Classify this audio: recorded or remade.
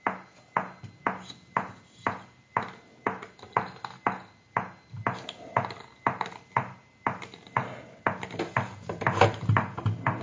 recorded